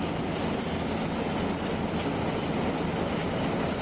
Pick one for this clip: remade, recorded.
recorded